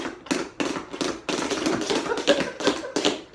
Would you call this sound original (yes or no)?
yes